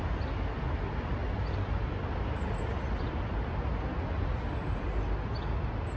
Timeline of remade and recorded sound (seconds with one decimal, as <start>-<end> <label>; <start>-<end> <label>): 0.0-6.0 recorded